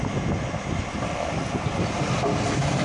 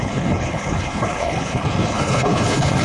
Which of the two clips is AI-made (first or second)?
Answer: second